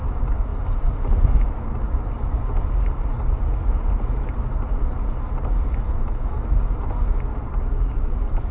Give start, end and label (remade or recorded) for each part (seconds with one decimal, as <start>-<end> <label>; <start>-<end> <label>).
0.0-8.5 recorded